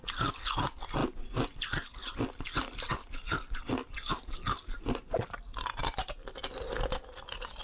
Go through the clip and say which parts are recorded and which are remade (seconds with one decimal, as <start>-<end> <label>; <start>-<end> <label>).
0.0-7.6 recorded